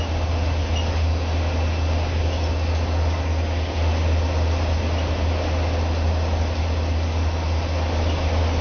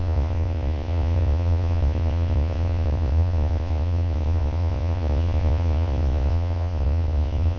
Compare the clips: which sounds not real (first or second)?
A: second